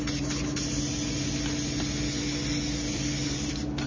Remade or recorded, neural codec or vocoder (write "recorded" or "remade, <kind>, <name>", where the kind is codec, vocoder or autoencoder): recorded